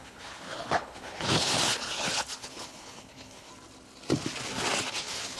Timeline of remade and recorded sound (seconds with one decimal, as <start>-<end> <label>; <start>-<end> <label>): 0.0-3.5 remade; 3.5-4.9 recorded; 4.9-5.4 remade